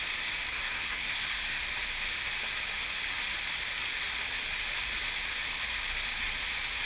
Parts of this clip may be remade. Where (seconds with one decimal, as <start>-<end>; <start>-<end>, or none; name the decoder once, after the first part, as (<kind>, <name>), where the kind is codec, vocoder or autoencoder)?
0.5-1.6 (codec, SNAC)